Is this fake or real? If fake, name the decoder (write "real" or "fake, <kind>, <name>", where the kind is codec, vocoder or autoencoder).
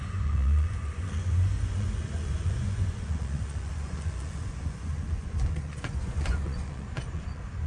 fake, vocoder, Vocos